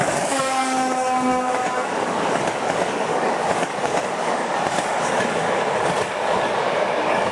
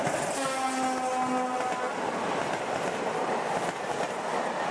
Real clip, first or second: second